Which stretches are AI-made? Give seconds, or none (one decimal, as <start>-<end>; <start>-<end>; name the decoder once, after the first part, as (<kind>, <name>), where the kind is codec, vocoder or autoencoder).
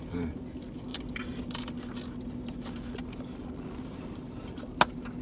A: 0.9-1.7 (vocoder, BigVGAN v2)